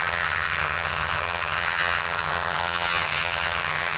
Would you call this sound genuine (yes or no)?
no